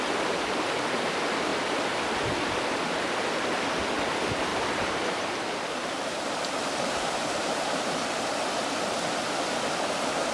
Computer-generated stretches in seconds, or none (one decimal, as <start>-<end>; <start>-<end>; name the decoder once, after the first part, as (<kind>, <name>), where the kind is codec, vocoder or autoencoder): 4.5-8.4 (vocoder, BigVGAN v2)